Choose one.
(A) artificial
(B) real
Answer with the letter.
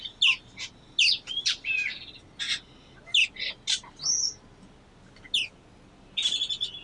B